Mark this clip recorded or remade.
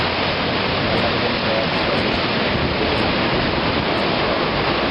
recorded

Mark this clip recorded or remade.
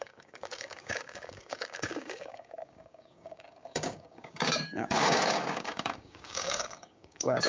remade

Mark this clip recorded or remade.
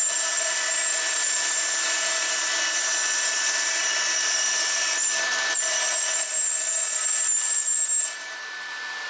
recorded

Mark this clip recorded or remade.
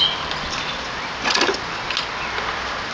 recorded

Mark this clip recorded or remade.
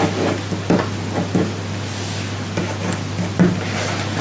recorded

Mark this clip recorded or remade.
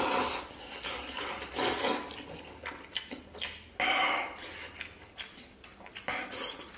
recorded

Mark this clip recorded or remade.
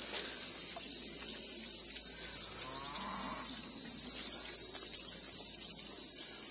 recorded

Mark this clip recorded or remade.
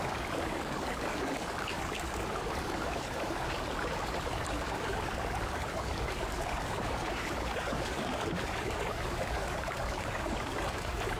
remade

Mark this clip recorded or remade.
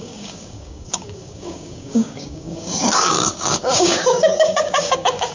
remade